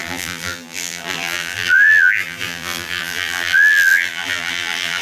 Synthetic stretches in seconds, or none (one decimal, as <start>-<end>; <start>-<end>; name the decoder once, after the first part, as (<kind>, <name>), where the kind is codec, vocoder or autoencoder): 0.0-5.0 (vocoder, BigVGAN v2)